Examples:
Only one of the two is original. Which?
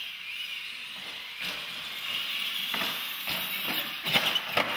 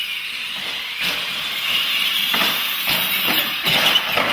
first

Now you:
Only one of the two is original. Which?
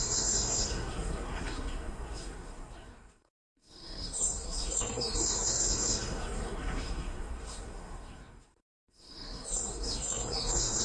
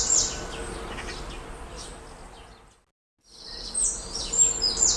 second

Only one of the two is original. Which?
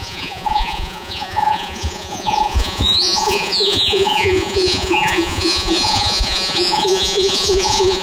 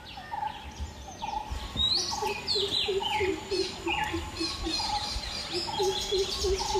second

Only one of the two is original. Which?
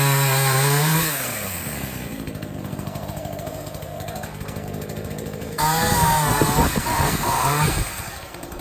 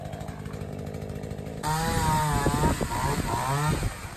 second